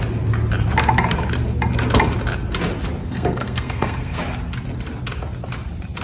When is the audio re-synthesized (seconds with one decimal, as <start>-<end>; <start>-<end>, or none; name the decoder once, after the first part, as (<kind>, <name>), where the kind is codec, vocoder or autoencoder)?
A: 3.0-4.2 (codec, SNAC)